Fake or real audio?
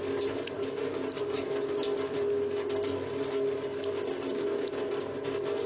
real